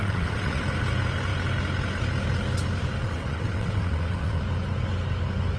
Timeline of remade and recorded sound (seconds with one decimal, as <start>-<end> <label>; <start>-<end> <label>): 0.0-0.6 remade; 0.6-3.0 recorded; 3.0-4.4 remade; 4.4-5.6 recorded